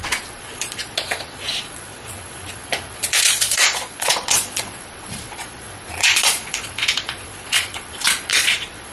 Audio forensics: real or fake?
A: fake